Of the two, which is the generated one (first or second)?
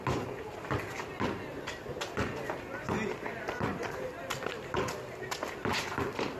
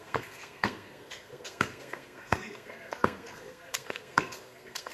second